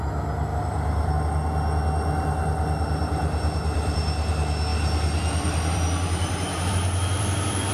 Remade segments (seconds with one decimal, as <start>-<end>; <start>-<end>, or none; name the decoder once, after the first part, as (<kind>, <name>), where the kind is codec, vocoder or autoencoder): 0.5-1.1 (vocoder, BigVGAN v2); 3.2-4.3; 4.7-7.7